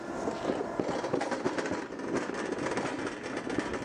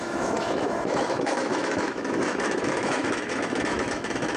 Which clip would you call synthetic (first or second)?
second